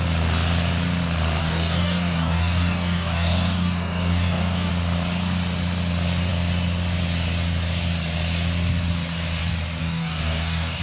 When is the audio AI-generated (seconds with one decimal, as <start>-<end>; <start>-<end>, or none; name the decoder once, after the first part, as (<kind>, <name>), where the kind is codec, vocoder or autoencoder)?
1.4-4.7 (codec, DAC); 9.8-10.8